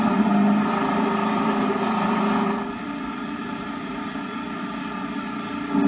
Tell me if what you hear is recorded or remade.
remade